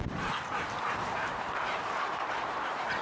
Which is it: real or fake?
fake